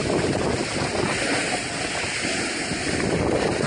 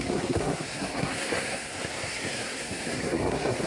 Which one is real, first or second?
first